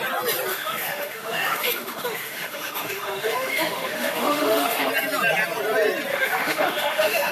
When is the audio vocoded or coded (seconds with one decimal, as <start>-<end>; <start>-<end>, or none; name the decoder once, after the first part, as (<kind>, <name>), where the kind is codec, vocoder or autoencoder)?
0.5-4.9 (autoencoder, DAC-VAE); 6.1-7.3